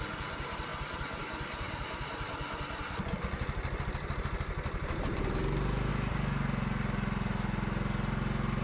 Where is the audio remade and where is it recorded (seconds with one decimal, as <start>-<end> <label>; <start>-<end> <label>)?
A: 0.0-0.7 recorded; 0.7-5.9 remade; 5.9-8.6 recorded